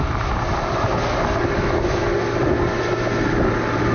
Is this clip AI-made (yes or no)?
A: no